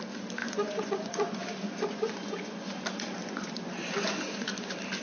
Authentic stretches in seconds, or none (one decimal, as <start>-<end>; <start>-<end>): 0.0-0.4; 2.7-3.2; 4.6-5.0